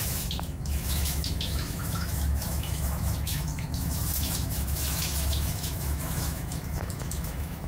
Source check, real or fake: fake